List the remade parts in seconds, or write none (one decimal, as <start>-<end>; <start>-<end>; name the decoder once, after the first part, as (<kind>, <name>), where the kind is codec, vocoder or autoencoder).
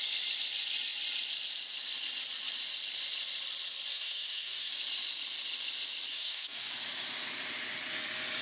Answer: 3.9-4.7 (codec, DAC); 6.1-6.7